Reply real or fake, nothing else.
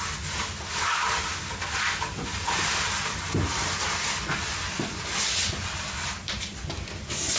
real